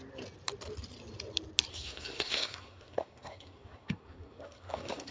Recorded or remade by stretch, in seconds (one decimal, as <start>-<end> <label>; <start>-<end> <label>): 0.0-1.7 recorded; 1.7-5.1 remade